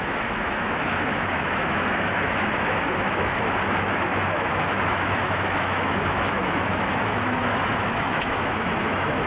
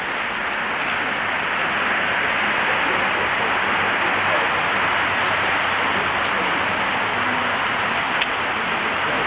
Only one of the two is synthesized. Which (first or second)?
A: first